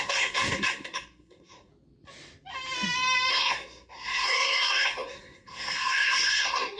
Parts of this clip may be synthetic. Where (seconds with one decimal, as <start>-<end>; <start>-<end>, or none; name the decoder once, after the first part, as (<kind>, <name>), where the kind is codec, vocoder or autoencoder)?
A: 0.0-1.7 (codec, SNAC); 3.3-6.8